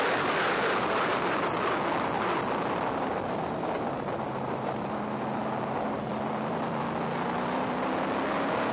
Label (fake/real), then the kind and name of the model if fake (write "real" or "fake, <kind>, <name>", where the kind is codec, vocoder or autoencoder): real